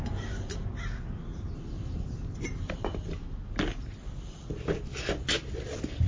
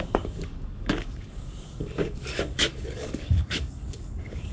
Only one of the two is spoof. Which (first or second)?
second